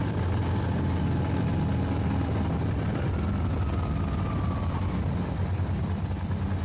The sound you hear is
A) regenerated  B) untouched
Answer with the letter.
B